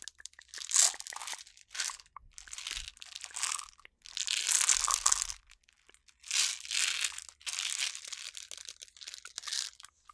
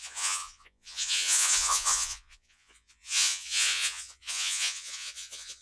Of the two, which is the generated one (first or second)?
second